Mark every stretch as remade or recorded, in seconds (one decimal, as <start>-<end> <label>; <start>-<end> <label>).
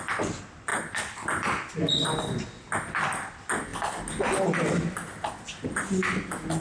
0.0-6.6 recorded